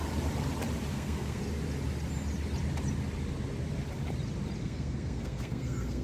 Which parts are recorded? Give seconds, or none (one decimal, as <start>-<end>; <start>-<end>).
0.0-0.9; 1.4-4.6